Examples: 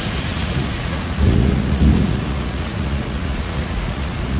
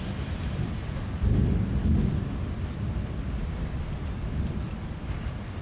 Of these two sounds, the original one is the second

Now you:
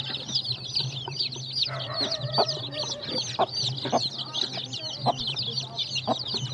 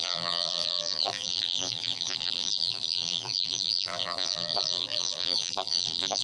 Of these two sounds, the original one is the first